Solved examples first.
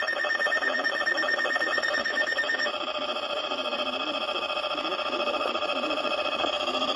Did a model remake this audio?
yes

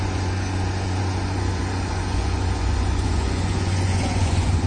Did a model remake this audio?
yes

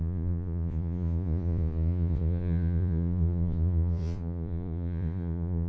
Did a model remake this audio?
yes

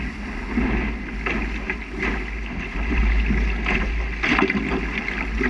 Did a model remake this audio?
no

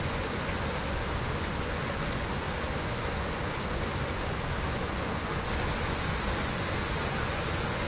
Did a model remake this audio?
yes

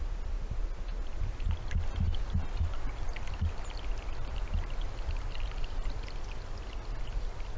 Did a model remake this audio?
no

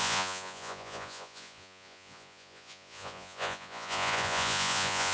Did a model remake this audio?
yes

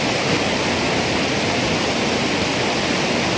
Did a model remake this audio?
no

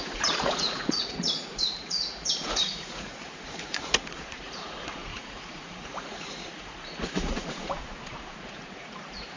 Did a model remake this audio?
yes